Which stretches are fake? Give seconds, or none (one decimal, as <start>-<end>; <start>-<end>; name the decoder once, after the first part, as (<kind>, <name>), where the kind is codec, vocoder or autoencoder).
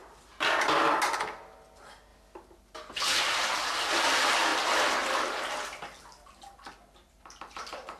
none